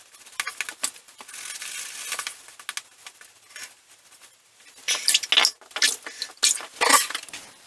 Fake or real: real